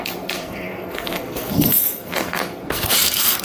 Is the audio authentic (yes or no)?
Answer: no